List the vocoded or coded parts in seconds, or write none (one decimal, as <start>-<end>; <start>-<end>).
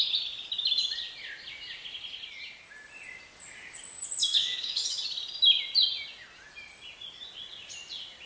4.2-5.0